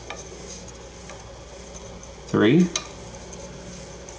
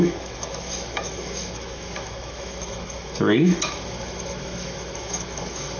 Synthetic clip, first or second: second